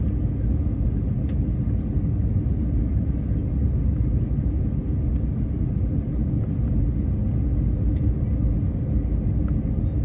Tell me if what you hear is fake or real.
real